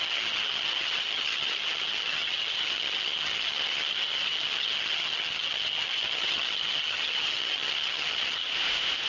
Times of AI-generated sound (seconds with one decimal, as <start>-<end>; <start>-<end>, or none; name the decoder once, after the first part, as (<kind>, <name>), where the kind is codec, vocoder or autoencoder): 0.0-8.4 (vocoder, HiFi-GAN)